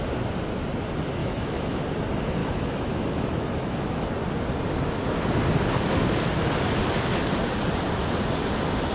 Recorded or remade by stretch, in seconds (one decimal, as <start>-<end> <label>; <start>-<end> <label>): 0.0-1.2 recorded; 1.2-1.8 remade; 1.8-2.4 recorded; 2.4-4.1 remade; 4.1-8.9 recorded